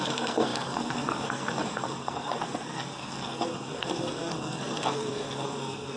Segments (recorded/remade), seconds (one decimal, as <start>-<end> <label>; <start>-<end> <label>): 0.0-6.0 remade